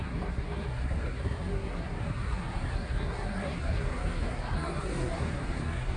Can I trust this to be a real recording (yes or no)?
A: no